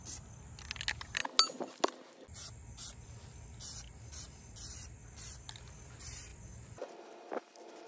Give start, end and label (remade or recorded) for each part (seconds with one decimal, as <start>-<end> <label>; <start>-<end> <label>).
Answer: 0.0-7.9 recorded